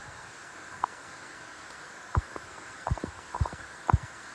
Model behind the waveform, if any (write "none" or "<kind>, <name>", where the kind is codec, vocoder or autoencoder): codec, SNAC